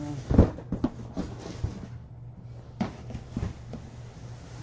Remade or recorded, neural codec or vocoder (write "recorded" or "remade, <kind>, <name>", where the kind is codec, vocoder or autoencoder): recorded